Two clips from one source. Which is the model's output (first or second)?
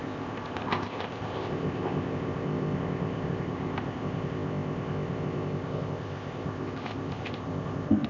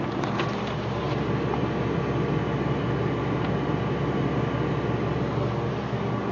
first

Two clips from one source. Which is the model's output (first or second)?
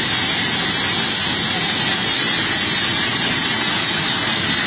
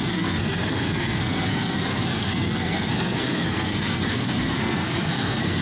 second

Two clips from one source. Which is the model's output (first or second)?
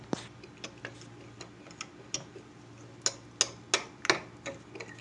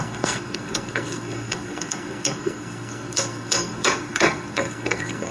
second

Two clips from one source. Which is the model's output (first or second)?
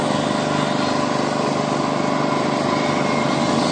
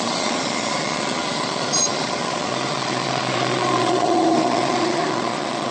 second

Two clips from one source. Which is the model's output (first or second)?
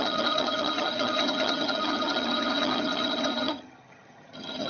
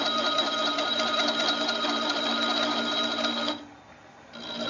first